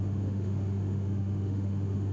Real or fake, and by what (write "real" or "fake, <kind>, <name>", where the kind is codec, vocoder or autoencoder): fake, autoencoder, DAC-VAE